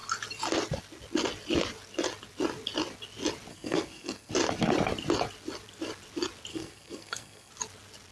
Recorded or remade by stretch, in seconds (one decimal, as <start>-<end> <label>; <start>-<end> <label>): 0.0-3.5 recorded; 3.5-4.3 remade; 4.3-6.5 recorded; 6.5-7.5 remade; 7.5-8.1 recorded